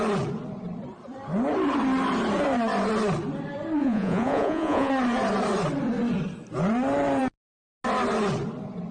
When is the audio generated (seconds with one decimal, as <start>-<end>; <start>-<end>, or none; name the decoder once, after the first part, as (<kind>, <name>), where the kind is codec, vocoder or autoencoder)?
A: 3.8-4.9 (vocoder, Vocos)